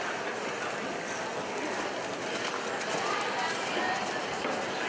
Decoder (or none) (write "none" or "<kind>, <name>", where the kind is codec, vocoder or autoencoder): none